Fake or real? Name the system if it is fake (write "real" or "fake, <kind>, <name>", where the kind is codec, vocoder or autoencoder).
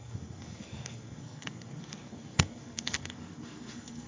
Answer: fake, codec, SNAC